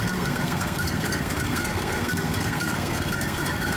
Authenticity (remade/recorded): remade